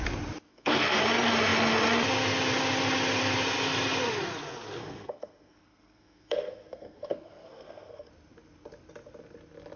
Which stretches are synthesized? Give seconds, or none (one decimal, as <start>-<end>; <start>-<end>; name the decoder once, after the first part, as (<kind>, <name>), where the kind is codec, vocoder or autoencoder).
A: 0.5-1.0 (codec, SNAC); 4.8-8.1